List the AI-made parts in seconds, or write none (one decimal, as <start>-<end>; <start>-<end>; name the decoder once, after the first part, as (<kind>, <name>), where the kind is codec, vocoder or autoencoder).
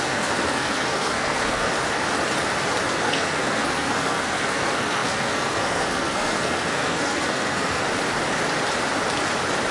0.0-1.7 (codec, SNAC); 2.9-7.8